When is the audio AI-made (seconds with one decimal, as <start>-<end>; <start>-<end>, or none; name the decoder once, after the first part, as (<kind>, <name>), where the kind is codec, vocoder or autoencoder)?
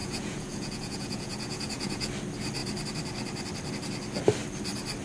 0.0-2.1 (vocoder, Vocos)